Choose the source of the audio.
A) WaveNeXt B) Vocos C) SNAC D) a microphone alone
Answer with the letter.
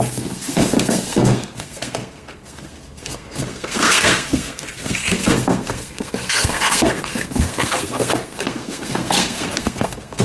C